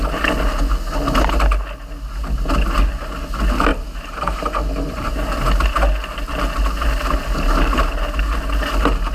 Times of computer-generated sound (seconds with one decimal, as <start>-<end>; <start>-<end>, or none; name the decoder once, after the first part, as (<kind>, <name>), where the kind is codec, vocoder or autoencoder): 3.7-5.3 (vocoder, BigVGAN v2)